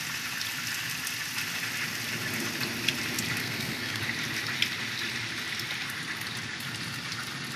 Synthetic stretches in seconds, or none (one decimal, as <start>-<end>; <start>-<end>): 3.4-4.0